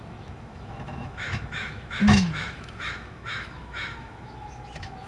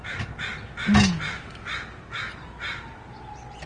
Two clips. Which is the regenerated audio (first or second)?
first